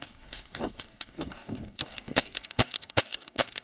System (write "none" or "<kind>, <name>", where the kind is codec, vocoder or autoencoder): codec, DAC